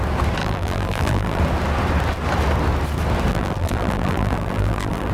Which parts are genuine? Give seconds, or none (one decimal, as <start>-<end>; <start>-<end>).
0.0-0.4; 1.4-3.3